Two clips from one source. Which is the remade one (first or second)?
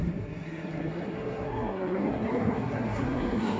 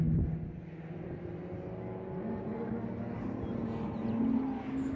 first